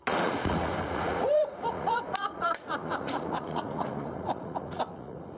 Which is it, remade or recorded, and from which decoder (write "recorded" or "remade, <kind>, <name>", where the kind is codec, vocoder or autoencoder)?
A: remade, vocoder, Vocos